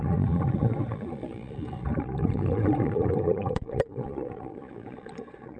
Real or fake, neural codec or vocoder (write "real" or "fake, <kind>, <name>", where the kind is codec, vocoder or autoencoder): fake, vocoder, Vocos